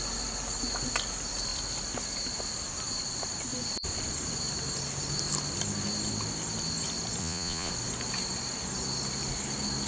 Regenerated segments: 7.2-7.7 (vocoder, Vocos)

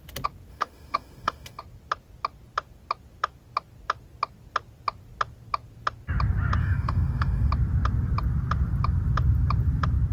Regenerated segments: 0.5-1.6 (autoencoder, DAC-VAE); 6.6-7.5